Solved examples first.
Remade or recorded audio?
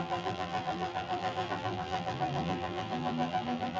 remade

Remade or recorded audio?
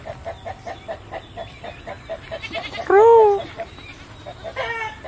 recorded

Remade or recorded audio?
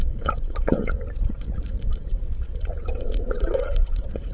remade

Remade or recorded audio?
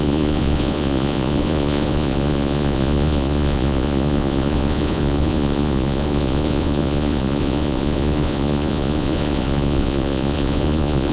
remade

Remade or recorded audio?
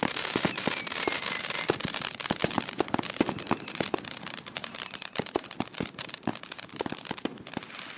remade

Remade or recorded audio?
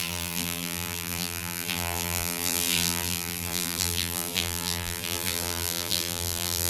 remade